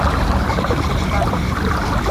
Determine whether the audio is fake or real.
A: fake